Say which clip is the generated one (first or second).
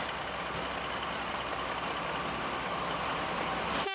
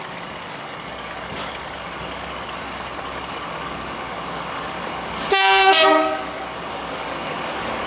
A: second